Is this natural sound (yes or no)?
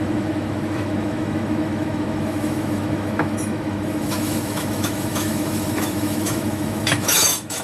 no